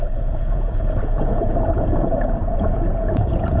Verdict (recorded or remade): remade